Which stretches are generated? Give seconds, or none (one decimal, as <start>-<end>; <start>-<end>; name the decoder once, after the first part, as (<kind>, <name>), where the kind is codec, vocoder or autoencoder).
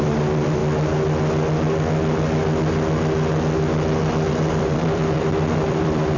0.0-0.6 (vocoder, BigVGAN v2); 4.3-6.2